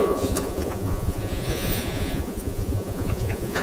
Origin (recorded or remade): remade